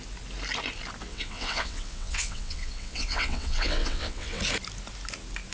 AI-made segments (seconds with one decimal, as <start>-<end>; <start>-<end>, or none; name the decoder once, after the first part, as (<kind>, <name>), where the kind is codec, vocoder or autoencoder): 1.1-4.4 (vocoder, WaveNeXt)

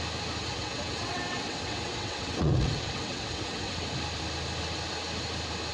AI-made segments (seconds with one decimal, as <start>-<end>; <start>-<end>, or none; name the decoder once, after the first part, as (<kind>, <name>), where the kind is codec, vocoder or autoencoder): 0.4-3.8 (vocoder, WaveNeXt)

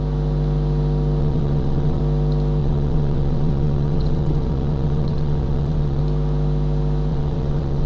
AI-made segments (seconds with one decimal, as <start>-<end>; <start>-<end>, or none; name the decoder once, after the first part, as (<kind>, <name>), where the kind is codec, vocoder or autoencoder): 1.2-2.0 (vocoder, WaveNeXt); 2.6-6.0; 7.1-7.9

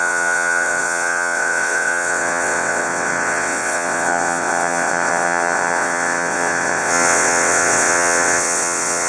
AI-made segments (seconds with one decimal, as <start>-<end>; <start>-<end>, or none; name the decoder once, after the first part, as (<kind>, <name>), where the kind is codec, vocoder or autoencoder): 0.0-9.1 (vocoder, WaveNeXt)

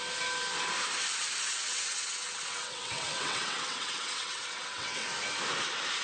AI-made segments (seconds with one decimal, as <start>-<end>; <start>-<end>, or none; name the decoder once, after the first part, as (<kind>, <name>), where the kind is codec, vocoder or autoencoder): 1.5-5.1 (vocoder, WaveNeXt)

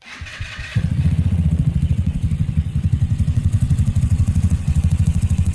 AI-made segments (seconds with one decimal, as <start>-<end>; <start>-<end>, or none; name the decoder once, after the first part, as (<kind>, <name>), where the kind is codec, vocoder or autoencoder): 0.0-5.5 (vocoder, WaveNeXt)

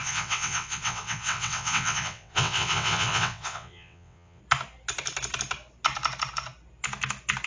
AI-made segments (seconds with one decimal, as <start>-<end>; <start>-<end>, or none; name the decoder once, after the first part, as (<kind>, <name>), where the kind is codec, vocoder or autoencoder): 0.0-4.4 (vocoder, WaveNeXt)